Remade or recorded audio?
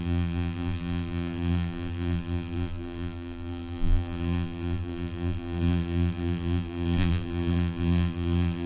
remade